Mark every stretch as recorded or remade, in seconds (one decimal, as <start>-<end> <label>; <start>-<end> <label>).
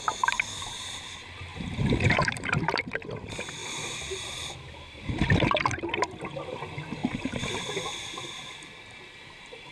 0.0-1.5 recorded; 1.5-2.6 remade; 2.6-3.6 recorded; 3.6-4.2 remade; 4.2-7.0 recorded; 7.0-7.7 remade; 7.7-9.7 recorded